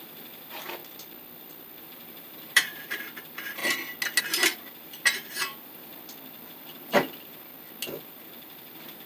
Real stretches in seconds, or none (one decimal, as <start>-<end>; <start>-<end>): 0.8-1.8; 3.6-4.2; 5.9-6.5; 7.5-8.0